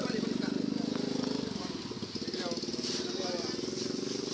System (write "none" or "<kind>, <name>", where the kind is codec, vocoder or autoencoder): none